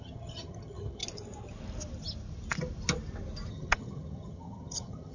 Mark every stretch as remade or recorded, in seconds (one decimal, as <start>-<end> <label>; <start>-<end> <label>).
0.0-1.0 remade; 1.0-3.5 recorded; 3.5-5.1 remade

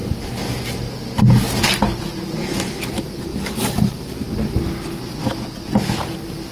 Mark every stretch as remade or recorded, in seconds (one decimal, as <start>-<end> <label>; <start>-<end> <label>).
0.0-3.3 recorded; 3.3-4.1 remade; 4.1-6.5 recorded

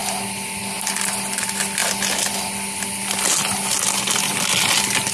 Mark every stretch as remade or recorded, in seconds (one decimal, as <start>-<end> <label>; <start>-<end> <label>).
0.0-5.1 recorded

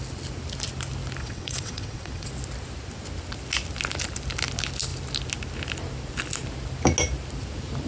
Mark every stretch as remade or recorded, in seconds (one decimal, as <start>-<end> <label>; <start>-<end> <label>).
0.0-1.2 recorded; 1.2-2.3 remade; 2.3-7.9 recorded

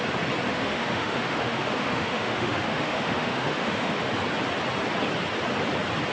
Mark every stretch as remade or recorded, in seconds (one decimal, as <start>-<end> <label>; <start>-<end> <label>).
0.0-0.5 recorded; 0.5-4.1 remade; 4.1-6.1 recorded

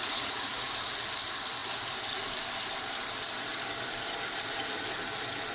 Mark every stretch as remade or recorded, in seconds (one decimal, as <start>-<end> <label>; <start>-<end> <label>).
0.0-0.7 remade; 0.7-5.5 recorded